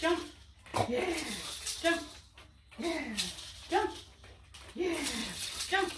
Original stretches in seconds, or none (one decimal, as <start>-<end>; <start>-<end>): 0.0-5.2